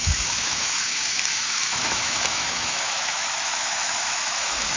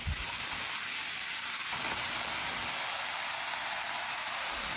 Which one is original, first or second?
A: second